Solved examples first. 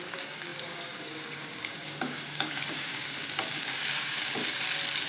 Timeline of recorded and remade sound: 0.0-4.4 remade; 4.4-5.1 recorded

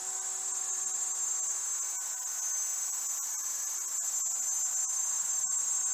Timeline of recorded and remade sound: 0.0-5.9 recorded

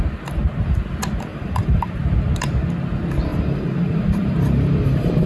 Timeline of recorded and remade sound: 0.0-1.3 recorded; 1.3-1.9 remade; 1.9-3.3 recorded; 3.3-5.3 remade

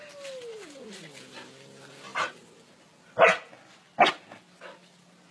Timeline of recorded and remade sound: 0.0-5.3 recorded